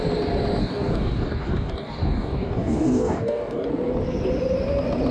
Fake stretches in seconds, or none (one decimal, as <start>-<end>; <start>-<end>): 0.6-3.7